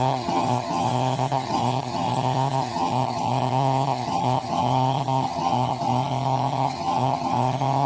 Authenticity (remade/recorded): remade